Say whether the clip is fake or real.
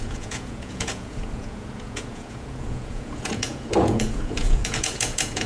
fake